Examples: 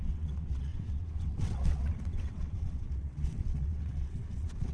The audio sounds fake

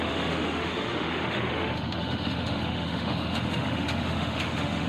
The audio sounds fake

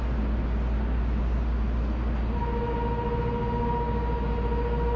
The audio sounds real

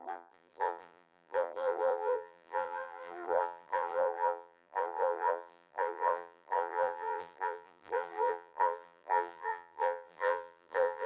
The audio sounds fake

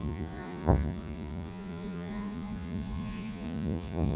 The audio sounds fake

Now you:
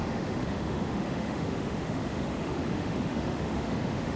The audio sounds fake